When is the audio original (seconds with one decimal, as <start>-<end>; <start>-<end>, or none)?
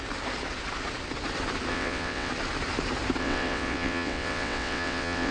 0.0-1.7; 2.3-3.2